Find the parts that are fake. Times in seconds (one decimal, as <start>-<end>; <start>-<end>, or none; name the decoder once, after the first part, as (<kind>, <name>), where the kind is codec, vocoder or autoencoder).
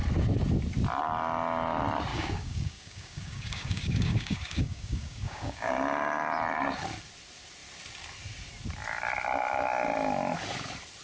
2.1-5.7 (codec, DAC)